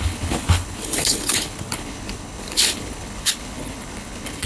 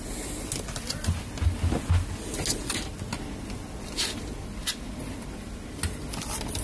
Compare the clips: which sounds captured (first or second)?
second